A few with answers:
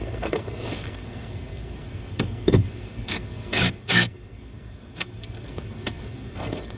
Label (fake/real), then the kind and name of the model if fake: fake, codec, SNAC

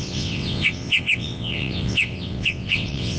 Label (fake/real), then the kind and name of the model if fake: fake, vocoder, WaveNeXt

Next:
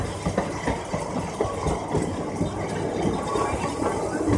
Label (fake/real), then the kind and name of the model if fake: real